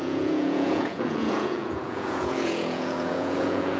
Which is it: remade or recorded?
remade